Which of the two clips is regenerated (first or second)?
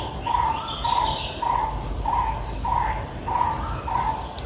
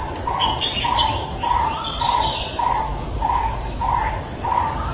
second